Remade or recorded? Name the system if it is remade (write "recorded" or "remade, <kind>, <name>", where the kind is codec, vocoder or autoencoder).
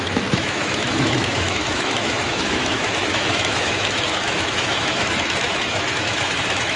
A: remade, autoencoder, DAC-VAE